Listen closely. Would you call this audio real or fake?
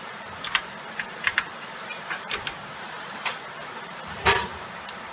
fake